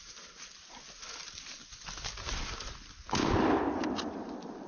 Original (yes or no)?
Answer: yes